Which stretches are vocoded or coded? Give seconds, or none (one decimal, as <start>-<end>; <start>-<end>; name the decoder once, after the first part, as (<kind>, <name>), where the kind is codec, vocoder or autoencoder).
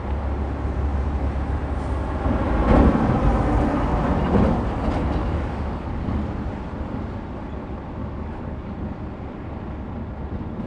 5.2-6.2 (codec, DAC); 8.0-8.7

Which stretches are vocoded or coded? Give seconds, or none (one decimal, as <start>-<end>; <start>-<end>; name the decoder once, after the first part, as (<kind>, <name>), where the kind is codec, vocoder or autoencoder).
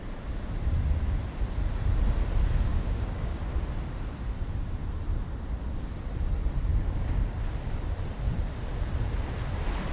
2.7-3.4 (codec, DAC)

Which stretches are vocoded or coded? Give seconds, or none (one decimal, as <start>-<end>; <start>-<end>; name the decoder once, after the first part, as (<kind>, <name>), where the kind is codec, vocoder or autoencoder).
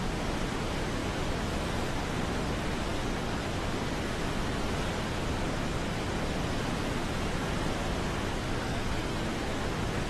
8.3-9.1 (codec, DAC)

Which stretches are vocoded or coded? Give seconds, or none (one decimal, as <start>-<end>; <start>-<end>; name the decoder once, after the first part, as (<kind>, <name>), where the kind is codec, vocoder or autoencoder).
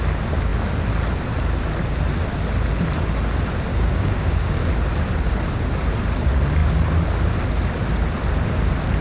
3.7-4.7 (codec, DAC)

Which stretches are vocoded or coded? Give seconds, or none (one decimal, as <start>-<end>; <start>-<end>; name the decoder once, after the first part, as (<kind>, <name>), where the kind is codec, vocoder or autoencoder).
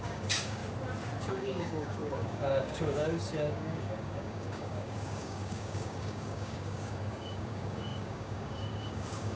0.0-0.6 (codec, DAC); 1.2-9.4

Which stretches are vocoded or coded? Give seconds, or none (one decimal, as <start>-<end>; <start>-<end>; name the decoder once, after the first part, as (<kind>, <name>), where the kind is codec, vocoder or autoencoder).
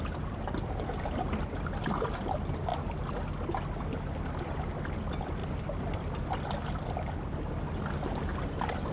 none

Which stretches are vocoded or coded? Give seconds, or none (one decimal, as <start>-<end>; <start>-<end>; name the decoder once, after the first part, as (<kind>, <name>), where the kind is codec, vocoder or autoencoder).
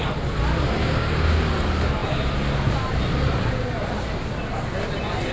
0.8-1.5 (codec, DAC)